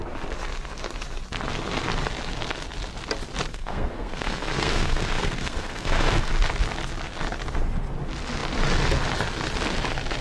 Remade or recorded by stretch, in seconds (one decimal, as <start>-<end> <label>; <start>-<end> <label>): 0.0-3.5 recorded; 3.5-6.3 remade; 6.3-10.2 recorded